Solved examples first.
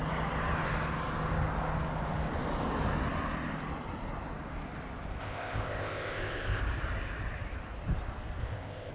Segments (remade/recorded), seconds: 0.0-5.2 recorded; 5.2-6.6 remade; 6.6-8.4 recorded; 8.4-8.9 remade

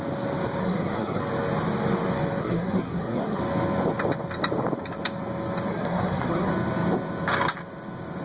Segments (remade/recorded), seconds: 0.0-0.6 recorded; 0.6-1.2 remade; 1.2-2.4 recorded; 2.4-3.4 remade; 3.4-5.7 recorded; 5.7-6.5 remade; 6.5-8.2 recorded

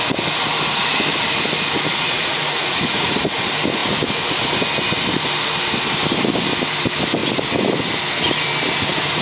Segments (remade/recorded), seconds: 0.0-1.9 recorded; 1.9-3.2 remade; 3.2-9.2 recorded